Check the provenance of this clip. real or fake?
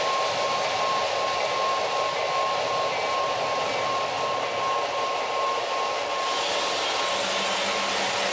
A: real